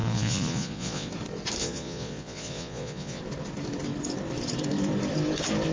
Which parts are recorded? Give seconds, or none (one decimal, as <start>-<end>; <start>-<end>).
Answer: 1.1-1.6; 3.2-5.7